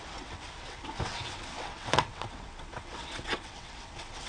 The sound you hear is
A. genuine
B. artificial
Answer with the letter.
B